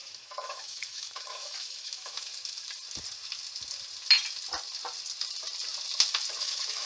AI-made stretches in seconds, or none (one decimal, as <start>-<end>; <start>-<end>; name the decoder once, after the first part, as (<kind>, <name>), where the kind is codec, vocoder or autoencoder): 0.0-2.3 (autoencoder, DAC-VAE); 6.4-6.9